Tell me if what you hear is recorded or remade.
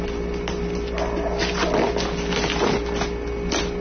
recorded